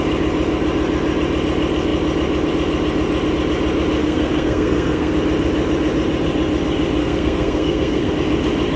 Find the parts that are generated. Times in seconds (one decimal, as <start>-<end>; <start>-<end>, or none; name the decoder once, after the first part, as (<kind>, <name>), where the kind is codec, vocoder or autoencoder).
4.0-5.1 (codec, SNAC); 7.0-8.1

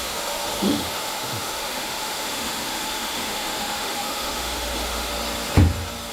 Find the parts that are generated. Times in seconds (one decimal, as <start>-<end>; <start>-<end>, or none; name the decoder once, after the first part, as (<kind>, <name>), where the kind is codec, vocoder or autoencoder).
0.0-5.1 (autoencoder, DAC-VAE)